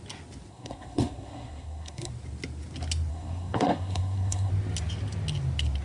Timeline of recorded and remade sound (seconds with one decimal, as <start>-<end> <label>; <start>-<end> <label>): 0.0-0.5 recorded; 0.5-2.1 remade; 2.1-3.1 recorded; 3.1-4.5 remade; 4.5-5.8 recorded